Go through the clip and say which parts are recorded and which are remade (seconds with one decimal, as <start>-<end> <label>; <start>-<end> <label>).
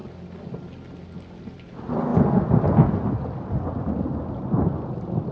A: 0.0-5.3 recorded